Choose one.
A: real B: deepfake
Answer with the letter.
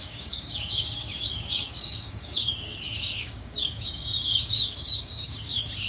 B